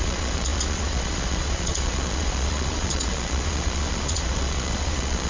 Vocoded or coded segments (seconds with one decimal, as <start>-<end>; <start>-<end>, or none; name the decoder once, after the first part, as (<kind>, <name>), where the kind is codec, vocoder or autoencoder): 0.0-5.3 (vocoder, Vocos)